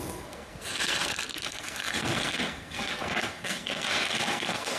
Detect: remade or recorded remade